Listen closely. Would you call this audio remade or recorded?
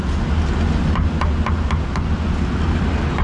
recorded